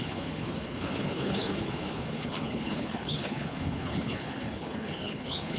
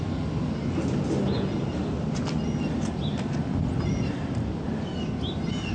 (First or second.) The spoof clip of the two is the first